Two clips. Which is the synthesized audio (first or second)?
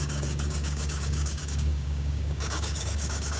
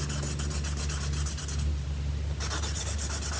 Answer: first